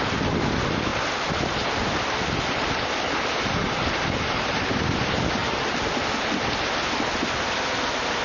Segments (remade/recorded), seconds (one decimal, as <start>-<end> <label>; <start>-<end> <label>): 0.0-8.2 recorded

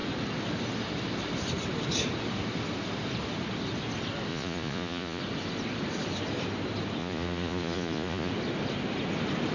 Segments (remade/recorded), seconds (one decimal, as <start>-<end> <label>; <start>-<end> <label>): 0.0-4.3 recorded; 4.3-5.2 remade; 5.2-7.0 recorded; 7.0-8.3 remade; 8.3-9.5 recorded

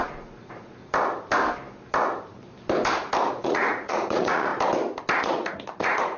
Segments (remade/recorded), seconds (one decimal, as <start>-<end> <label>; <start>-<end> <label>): 0.0-0.8 remade; 0.8-3.3 recorded; 3.3-4.5 remade; 4.5-5.2 recorded; 5.2-6.2 remade

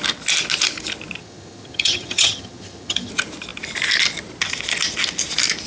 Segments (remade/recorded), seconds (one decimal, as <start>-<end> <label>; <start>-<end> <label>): 0.0-1.2 recorded; 1.2-3.1 remade; 3.1-5.7 recorded